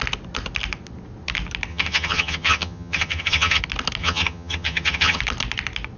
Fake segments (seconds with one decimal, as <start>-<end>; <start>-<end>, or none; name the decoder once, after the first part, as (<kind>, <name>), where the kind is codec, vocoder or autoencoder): 1.7-3.6 (vocoder, HiFi-GAN); 4.0-5.2